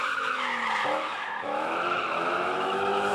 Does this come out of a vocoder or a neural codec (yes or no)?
yes